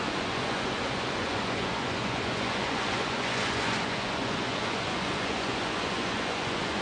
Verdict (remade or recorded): remade